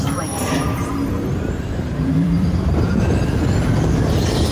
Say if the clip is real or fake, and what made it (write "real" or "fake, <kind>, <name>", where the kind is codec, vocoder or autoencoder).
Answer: fake, vocoder, BigVGAN v2